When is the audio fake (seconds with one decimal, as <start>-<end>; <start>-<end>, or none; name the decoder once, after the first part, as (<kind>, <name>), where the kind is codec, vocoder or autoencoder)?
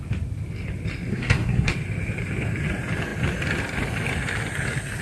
1.1-1.7 (codec, SNAC)